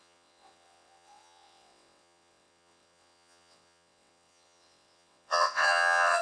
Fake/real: fake